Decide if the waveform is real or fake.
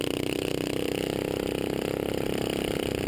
real